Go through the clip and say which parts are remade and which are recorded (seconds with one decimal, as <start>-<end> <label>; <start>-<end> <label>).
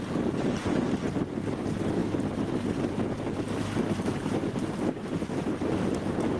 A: 0.0-6.4 recorded